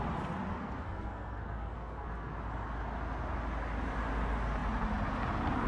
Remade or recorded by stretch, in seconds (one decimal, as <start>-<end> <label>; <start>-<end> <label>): 0.0-0.5 recorded; 0.5-2.3 remade; 2.3-5.7 recorded